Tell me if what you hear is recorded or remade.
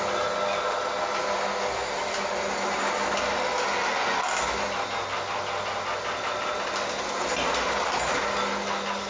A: recorded